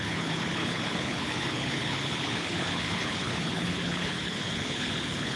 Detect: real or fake fake